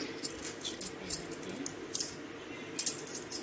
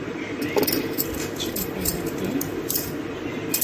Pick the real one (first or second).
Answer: first